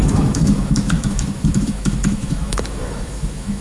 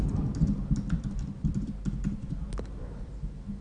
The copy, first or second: first